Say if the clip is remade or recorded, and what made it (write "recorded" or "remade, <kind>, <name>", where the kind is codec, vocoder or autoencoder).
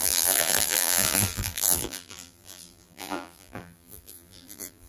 remade, vocoder, BigVGAN v2